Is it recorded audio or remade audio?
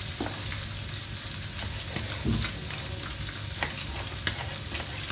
recorded